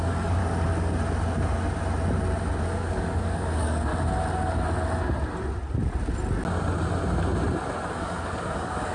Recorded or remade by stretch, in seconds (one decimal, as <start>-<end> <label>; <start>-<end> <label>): 0.0-0.4 remade; 0.4-2.6 recorded; 2.6-3.9 remade; 3.9-7.9 recorded; 7.9-8.9 remade